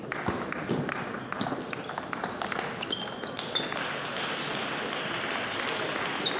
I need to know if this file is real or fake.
real